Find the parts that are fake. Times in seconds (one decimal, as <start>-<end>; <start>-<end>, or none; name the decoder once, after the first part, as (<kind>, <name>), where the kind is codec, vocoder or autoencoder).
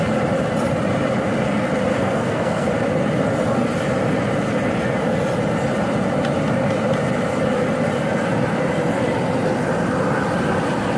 1.9-2.7 (codec, SNAC)